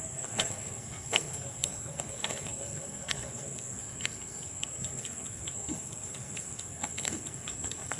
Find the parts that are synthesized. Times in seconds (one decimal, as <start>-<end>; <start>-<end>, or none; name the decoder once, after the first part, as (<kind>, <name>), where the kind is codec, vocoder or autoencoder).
0.0-8.0 (codec, SNAC)